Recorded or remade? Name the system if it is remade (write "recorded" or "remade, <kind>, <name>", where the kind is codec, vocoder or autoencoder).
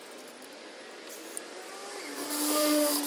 recorded